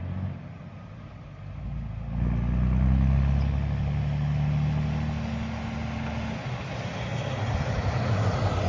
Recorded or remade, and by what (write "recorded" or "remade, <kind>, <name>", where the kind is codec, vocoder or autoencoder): recorded